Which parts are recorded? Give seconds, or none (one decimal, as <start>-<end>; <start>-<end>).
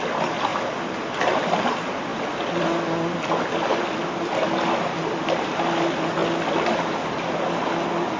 0.0-8.2